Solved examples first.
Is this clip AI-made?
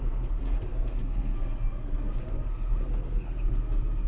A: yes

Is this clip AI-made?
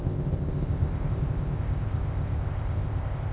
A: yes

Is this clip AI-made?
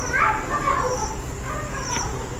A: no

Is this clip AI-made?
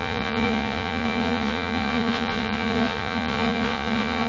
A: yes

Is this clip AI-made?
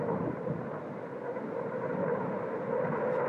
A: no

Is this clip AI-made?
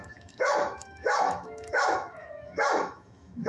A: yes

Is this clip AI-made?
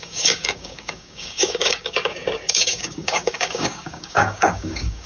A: yes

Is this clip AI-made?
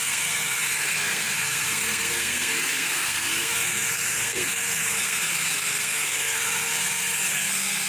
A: yes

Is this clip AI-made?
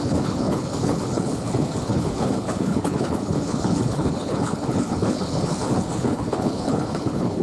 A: yes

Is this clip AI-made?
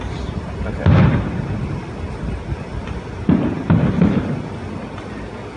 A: no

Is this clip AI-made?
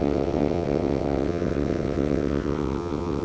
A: yes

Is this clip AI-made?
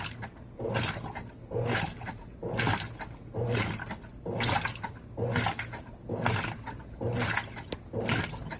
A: no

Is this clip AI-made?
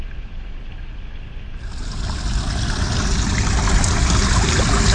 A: no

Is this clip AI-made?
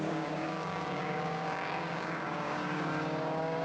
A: yes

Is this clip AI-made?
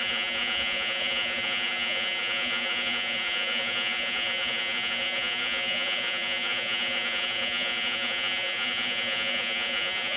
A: yes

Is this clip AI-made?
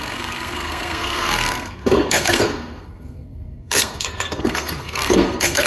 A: yes